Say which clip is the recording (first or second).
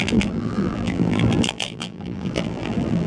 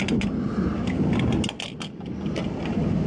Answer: second